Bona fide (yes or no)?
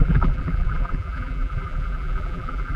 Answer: no